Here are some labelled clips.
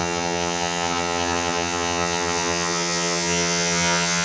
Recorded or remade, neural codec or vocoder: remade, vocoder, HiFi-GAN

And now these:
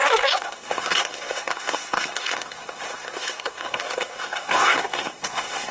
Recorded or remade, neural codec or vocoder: remade, codec, SNAC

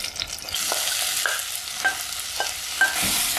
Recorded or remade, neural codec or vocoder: recorded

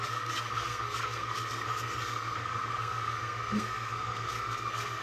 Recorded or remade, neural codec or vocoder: remade, codec, SNAC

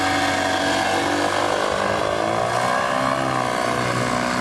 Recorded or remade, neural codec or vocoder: recorded